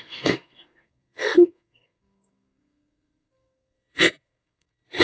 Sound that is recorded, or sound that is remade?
remade